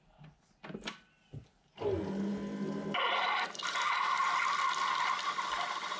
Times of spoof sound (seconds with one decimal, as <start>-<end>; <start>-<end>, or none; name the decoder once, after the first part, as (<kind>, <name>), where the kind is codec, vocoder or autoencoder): none